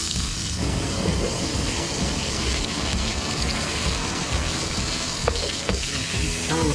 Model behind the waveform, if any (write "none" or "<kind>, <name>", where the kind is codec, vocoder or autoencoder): codec, SNAC